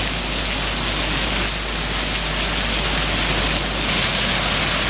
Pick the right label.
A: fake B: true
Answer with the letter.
B